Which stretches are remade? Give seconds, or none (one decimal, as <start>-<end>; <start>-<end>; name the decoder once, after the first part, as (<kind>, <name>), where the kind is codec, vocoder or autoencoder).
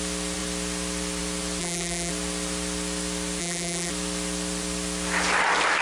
1.6-2.1 (vocoder, BigVGAN v2); 3.4-3.9